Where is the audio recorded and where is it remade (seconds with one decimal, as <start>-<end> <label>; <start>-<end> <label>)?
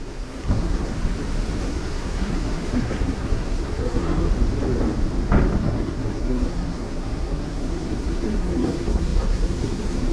0.0-0.9 remade; 0.9-1.6 recorded; 1.6-4.2 remade; 4.2-5.6 recorded; 5.6-10.1 remade